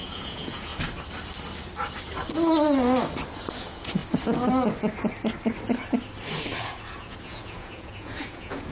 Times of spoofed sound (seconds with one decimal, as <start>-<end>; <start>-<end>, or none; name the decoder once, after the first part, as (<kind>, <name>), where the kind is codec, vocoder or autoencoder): 0.0-0.7 (vocoder, Vocos); 3.6-4.0; 6.6-8.7